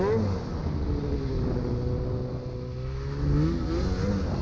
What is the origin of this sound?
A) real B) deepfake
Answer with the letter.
A